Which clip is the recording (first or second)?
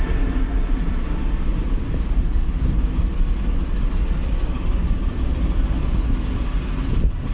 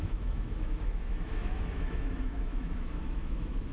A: first